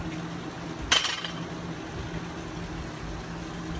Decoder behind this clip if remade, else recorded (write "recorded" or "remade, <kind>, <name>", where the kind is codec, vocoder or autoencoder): recorded